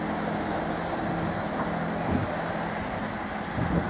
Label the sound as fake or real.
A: real